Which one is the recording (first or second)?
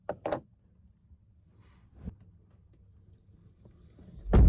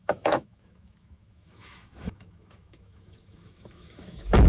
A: first